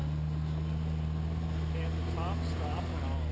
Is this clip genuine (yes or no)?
yes